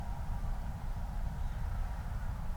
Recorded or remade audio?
remade